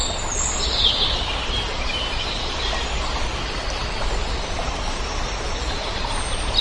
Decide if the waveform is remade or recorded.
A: recorded